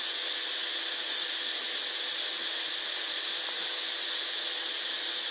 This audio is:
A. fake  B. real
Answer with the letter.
B